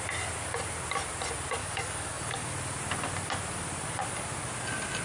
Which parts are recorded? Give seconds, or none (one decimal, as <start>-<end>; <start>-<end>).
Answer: 0.0-1.6; 2.5-5.0